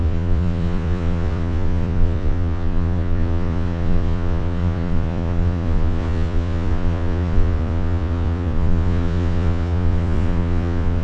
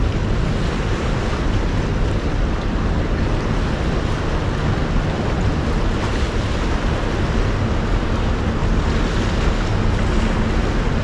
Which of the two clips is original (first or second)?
second